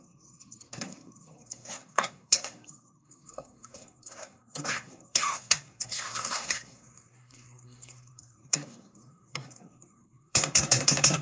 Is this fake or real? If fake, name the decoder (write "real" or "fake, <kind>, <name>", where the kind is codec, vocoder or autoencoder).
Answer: fake, codec, SNAC